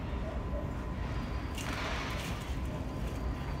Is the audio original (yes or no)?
yes